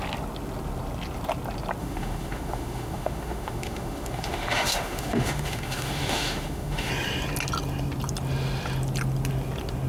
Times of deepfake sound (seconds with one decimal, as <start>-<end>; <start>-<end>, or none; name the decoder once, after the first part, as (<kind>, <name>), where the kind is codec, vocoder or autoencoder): 1.8-6.9 (autoencoder, DAC-VAE)